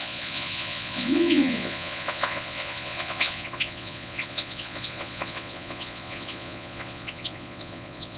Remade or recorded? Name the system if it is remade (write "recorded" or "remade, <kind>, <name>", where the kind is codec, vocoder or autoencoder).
remade, vocoder, Vocos